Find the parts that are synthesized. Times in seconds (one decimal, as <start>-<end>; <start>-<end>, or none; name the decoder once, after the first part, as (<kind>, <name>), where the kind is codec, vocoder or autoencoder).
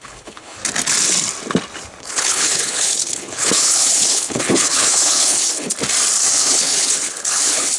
0.0-0.6 (codec, HILCodec); 2.0-5.7; 6.3-7.8